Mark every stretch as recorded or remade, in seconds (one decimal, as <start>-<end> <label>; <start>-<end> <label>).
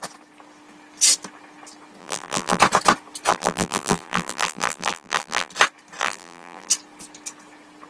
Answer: 0.0-2.0 recorded; 2.0-2.6 remade; 2.6-3.3 recorded; 3.3-5.5 remade; 5.5-6.0 recorded; 6.0-6.7 remade; 6.7-7.9 recorded